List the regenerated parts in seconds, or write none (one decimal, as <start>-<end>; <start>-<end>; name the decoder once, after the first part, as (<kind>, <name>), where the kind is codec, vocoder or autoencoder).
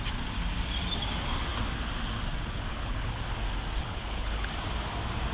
2.7-3.2 (codec, HILCodec); 3.8-4.5